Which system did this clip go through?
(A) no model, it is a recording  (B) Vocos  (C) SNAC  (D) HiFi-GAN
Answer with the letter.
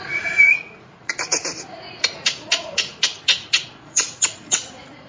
B